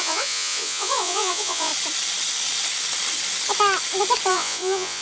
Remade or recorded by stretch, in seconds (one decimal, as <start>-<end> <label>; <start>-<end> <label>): 0.0-1.7 remade; 1.7-4.3 recorded; 4.3-5.0 remade